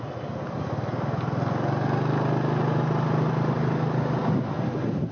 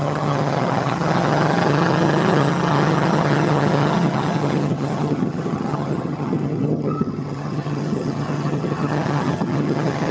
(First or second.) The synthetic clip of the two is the second